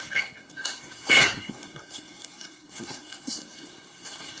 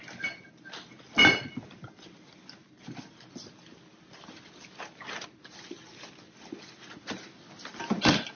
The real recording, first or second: second